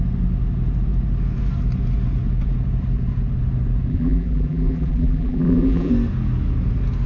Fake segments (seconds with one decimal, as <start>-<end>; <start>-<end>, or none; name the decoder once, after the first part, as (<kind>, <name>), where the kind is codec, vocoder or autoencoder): 3.9-5.9 (vocoder, BigVGAN v2)